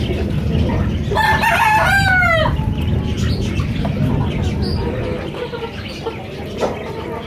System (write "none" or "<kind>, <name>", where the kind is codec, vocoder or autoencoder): none